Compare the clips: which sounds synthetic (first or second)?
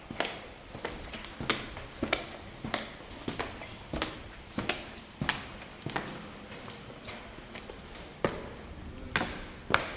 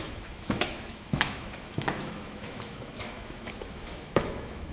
second